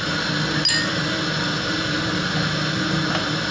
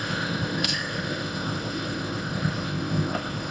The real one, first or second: first